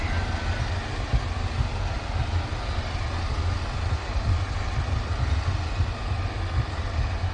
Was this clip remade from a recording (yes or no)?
no